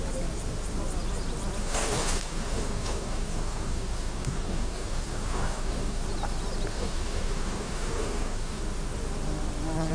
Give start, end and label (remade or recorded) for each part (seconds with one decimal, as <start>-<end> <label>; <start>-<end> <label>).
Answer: 0.0-1.6 recorded; 1.6-6.0 remade; 6.0-6.7 recorded; 6.7-8.6 remade; 8.6-9.9 recorded